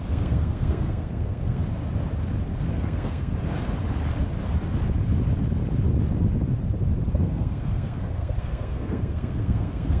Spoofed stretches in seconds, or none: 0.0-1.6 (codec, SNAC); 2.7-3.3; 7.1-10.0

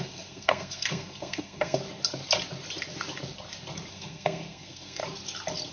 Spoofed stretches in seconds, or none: 0.0-1.8 (codec, SNAC); 3.9-5.0

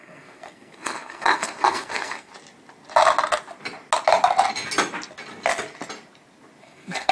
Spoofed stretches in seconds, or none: 0.0-2.3 (codec, SNAC); 6.6-7.1